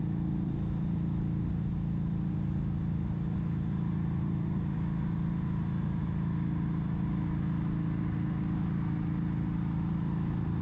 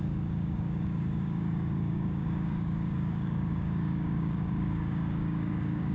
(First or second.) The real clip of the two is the first